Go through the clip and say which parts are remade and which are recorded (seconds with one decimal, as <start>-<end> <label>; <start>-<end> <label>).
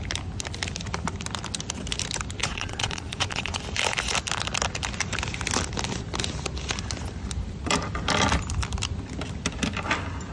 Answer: 0.0-2.4 recorded; 2.4-3.6 remade; 3.6-10.3 recorded